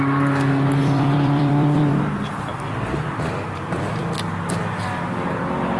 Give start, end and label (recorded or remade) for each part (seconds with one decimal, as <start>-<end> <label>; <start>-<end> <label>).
0.0-0.8 recorded; 0.8-2.0 remade; 2.0-2.5 recorded; 2.5-4.2 remade; 4.2-5.8 recorded

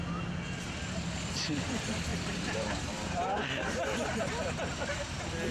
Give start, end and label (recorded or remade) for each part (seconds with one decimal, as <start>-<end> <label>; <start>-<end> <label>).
0.0-2.1 recorded; 2.1-3.4 remade; 3.4-5.5 recorded